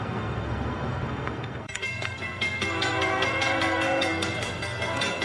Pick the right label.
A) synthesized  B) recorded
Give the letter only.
A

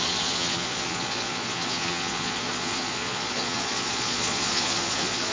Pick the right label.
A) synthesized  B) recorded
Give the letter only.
A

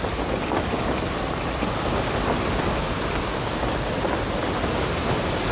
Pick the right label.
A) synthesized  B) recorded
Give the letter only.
B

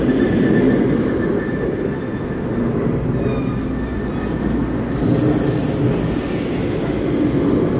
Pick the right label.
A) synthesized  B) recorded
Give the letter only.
B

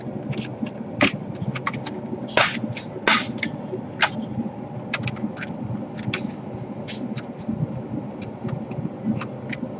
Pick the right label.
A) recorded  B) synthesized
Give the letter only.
A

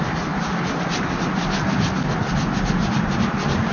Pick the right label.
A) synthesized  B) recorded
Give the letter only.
B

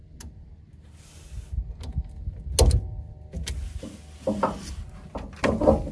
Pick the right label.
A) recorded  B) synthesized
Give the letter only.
A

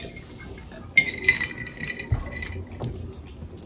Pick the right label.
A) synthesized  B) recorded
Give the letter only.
B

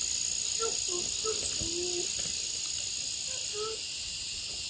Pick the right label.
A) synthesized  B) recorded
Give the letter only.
B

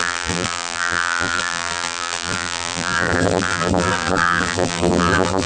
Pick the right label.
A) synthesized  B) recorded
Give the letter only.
A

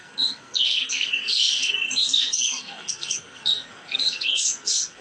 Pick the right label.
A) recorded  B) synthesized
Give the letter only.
B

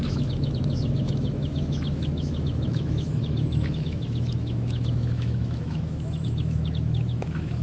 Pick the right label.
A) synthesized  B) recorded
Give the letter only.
A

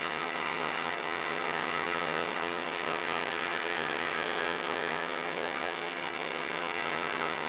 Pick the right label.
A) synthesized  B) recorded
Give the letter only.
A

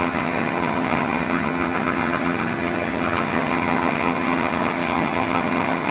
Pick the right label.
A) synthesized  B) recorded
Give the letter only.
A